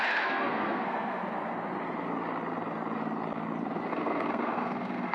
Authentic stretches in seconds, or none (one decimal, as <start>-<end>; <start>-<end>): 1.2-3.9